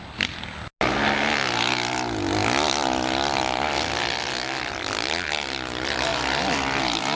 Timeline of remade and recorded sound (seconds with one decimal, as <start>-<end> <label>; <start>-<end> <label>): 0.0-6.1 recorded; 6.1-6.8 remade; 6.8-7.2 recorded